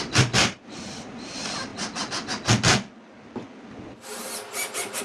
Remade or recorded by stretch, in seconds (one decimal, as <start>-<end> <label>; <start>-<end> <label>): 0.0-1.7 remade; 1.7-5.0 recorded

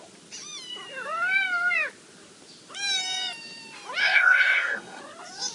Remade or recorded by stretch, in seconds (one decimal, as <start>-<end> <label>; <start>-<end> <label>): 0.0-4.0 recorded; 4.0-5.0 remade; 5.0-5.5 recorded